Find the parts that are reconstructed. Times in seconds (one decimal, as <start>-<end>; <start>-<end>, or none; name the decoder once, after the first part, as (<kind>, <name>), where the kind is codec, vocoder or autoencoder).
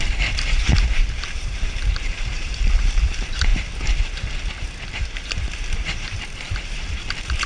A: 0.0-3.5 (vocoder, BigVGAN v2); 5.7-7.5